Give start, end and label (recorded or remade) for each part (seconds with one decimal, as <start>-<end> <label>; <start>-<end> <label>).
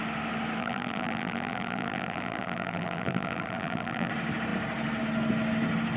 0.0-0.6 recorded; 0.6-4.1 remade; 4.1-6.0 recorded